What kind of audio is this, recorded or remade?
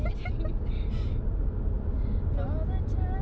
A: recorded